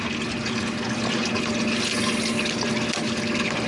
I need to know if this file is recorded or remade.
recorded